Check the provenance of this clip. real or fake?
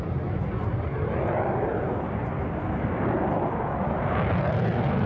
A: real